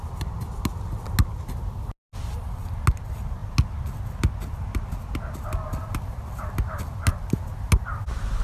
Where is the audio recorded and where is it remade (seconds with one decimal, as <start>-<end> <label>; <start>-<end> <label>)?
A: 0.0-8.4 recorded

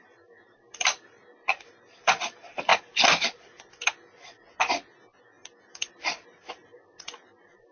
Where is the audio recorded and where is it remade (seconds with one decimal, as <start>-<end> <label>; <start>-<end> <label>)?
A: 0.0-2.7 remade; 2.7-6.0 recorded; 6.0-7.7 remade

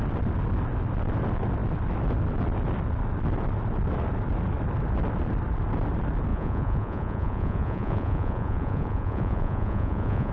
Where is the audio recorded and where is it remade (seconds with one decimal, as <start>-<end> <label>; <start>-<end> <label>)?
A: 0.0-6.3 recorded; 6.3-10.3 remade

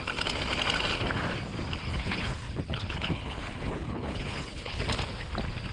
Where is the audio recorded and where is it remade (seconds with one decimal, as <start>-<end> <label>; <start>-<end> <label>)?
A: 0.0-1.9 recorded; 1.9-4.8 remade; 4.8-5.7 recorded

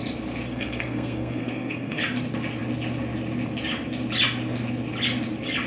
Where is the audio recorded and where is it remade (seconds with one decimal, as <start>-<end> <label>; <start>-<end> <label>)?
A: 0.0-0.5 recorded; 0.5-2.0 remade; 2.0-5.7 recorded

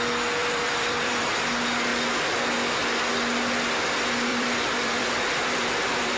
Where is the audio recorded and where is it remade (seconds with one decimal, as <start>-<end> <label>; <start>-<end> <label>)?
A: 0.0-0.4 recorded; 0.4-1.3 remade; 1.3-4.3 recorded; 4.3-6.2 remade

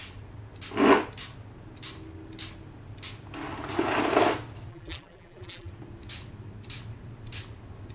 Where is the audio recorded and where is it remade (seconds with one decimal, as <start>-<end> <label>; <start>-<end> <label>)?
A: 0.0-4.7 recorded; 4.7-5.7 remade; 5.7-7.9 recorded

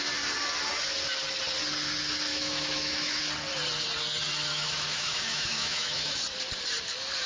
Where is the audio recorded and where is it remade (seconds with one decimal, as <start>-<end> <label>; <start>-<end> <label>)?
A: 0.0-2.3 recorded; 2.3-3.2 remade; 3.2-4.5 recorded; 4.5-6.2 remade; 6.2-7.3 recorded